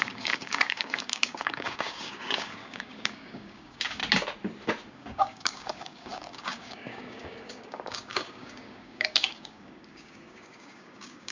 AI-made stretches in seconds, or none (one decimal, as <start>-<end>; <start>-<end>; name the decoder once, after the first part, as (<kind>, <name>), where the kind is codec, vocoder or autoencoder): 0.0-4.0 (codec, DAC); 4.9-11.3